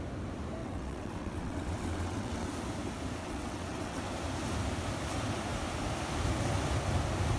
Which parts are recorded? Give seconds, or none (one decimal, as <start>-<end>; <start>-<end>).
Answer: 0.0-0.6; 2.5-3.2; 4.0-7.4